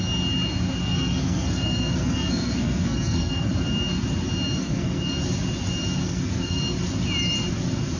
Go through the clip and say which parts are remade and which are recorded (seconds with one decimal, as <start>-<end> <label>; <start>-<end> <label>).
0.0-0.8 recorded; 0.8-3.5 remade; 3.5-4.6 recorded; 4.6-5.1 remade; 5.1-6.0 recorded; 6.0-6.6 remade; 6.6-8.0 recorded